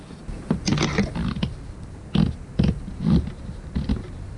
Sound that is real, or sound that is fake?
real